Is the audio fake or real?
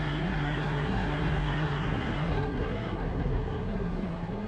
fake